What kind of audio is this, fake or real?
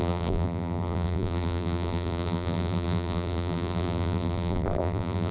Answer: fake